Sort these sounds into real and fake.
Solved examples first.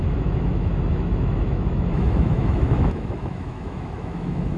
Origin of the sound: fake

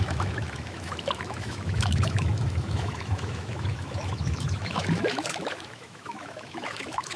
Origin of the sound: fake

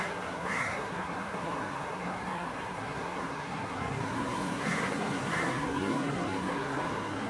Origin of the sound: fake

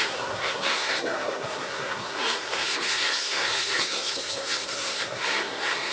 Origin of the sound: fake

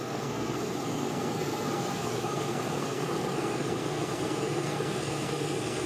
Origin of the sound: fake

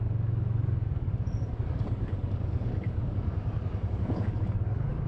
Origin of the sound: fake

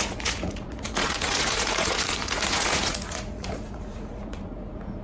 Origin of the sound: fake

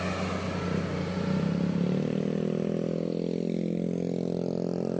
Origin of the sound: real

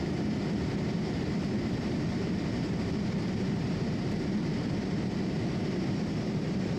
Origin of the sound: fake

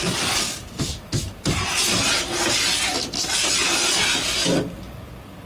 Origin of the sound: real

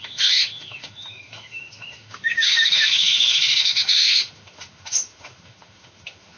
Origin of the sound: fake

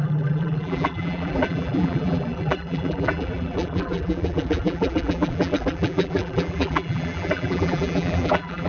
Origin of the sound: fake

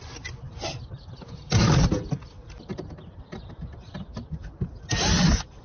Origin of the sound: real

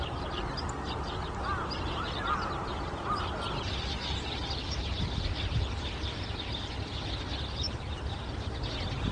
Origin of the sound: real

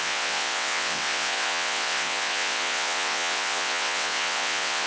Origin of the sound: fake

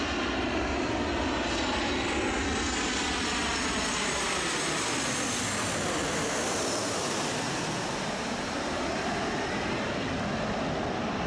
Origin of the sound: real